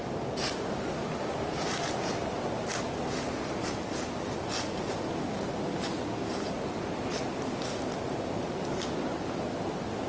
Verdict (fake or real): real